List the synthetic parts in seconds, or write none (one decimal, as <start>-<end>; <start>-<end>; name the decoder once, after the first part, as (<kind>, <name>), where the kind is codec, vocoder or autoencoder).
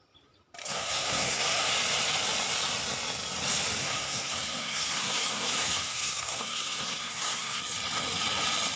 0.6-1.7 (codec, SNAC); 3.8-7.6